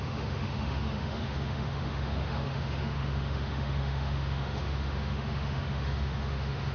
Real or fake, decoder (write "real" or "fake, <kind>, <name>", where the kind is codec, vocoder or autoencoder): fake, autoencoder, DAC-VAE